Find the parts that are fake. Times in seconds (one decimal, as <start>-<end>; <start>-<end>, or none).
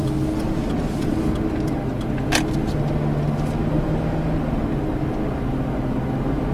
none